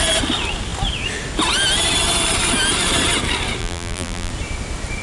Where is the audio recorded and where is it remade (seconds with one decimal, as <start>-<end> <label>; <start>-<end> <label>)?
0.0-3.6 recorded; 3.6-4.3 remade; 4.3-5.0 recorded